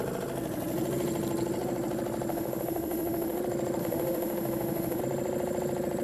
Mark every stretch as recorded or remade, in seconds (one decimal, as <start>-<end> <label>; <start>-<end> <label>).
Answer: 0.0-2.3 recorded; 2.3-3.4 remade; 3.4-3.8 recorded; 3.8-5.0 remade; 5.0-6.0 recorded